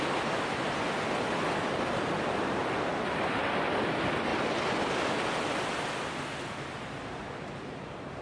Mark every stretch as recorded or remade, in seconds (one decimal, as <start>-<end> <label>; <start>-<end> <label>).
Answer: 0.0-8.2 recorded